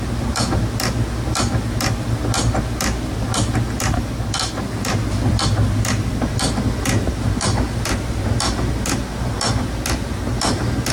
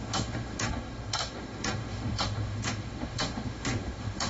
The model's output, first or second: second